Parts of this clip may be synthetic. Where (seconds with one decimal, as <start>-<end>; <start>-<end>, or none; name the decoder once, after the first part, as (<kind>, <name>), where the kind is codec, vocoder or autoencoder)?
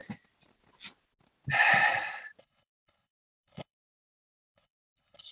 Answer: 2.4-5.3 (codec, HILCodec)